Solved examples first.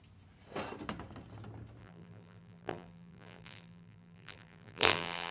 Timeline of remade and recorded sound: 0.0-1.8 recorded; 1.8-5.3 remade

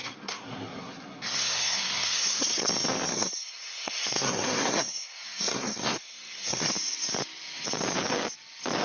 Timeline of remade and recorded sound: 0.0-2.7 remade; 2.7-3.1 recorded; 3.1-6.7 remade; 6.7-8.8 recorded